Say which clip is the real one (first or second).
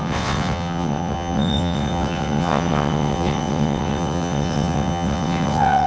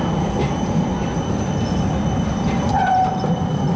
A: second